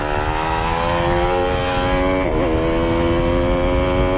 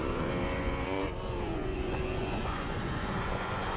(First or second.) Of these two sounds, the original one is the first